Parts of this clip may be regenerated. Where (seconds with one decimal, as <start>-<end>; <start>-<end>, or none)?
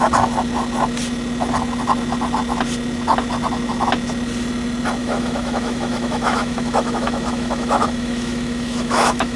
5.0-9.4